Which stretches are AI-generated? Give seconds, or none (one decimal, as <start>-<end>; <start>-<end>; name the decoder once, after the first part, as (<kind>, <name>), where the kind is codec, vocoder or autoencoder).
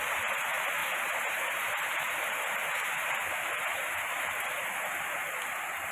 0.0-5.9 (vocoder, BigVGAN v2)